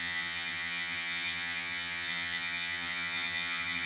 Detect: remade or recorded remade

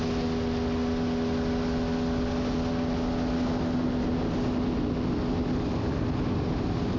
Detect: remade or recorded recorded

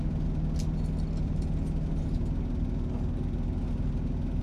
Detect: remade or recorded recorded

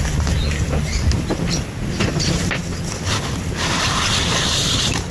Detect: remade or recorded recorded